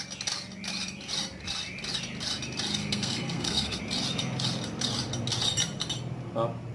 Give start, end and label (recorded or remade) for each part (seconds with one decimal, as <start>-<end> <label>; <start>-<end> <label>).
0.0-2.8 recorded; 2.8-3.8 remade; 3.8-6.7 recorded

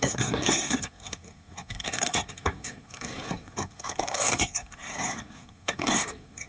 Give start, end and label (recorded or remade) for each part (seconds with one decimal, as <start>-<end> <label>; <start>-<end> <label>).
0.0-6.5 remade

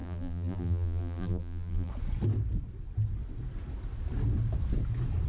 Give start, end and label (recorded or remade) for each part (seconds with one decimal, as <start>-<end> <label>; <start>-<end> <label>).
0.0-1.9 remade; 1.9-5.3 recorded

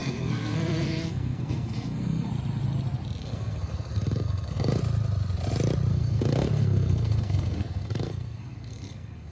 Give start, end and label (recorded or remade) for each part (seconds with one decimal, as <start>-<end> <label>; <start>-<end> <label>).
0.0-2.3 remade; 2.3-3.2 recorded; 3.2-4.8 remade; 4.8-5.9 recorded; 5.9-9.3 remade

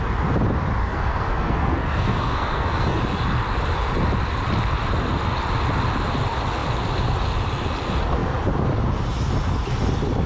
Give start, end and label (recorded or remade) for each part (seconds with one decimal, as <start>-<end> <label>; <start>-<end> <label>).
0.0-0.8 recorded; 0.8-3.0 remade; 3.0-10.3 recorded

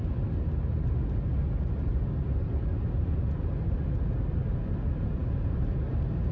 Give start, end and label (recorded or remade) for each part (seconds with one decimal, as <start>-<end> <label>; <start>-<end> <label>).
0.0-6.3 recorded

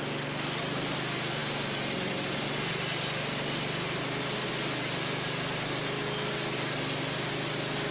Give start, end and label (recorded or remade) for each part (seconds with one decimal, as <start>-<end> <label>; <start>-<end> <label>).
0.0-7.9 recorded